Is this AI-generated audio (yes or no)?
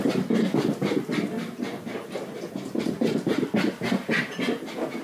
no